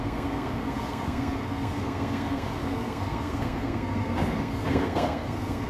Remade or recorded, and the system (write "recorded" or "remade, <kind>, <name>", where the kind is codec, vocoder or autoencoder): remade, codec, SNAC